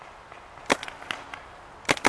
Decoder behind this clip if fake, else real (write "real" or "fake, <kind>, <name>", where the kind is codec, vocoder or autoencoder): real